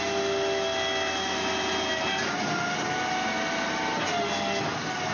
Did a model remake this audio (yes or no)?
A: no